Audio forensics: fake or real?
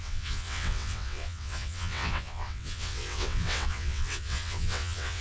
fake